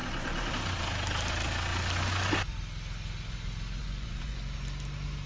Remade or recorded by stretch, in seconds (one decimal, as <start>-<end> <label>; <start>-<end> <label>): 0.0-0.5 remade; 0.5-3.8 recorded; 3.8-4.4 remade; 4.4-5.3 recorded

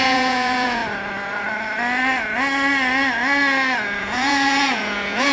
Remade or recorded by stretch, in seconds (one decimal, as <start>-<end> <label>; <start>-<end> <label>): 0.0-0.8 remade; 0.8-4.0 recorded; 4.0-5.3 remade